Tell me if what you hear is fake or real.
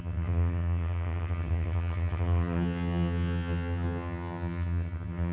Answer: fake